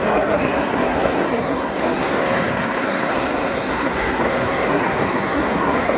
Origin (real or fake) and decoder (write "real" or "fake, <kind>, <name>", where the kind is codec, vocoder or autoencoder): fake, codec, SNAC